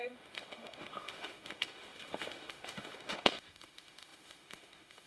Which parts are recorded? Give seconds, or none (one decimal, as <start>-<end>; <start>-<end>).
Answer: none